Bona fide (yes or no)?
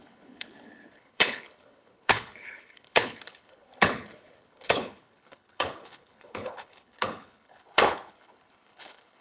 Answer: no